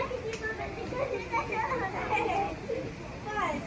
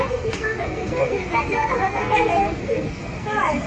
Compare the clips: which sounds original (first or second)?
first